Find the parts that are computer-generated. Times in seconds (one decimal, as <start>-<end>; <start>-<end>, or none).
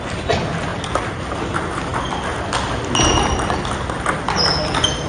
none